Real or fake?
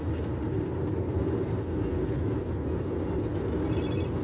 real